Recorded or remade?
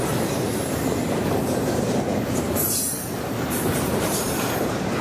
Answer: remade